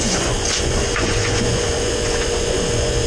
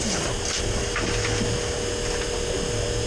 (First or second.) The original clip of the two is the second